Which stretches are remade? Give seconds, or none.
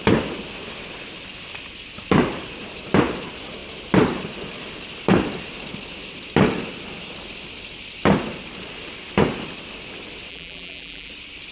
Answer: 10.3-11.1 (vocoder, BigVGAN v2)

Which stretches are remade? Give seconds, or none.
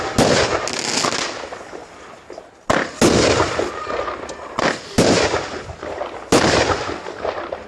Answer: none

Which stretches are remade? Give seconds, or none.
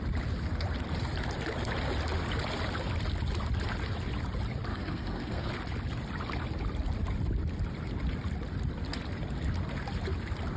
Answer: 4.7-5.5 (codec, SNAC)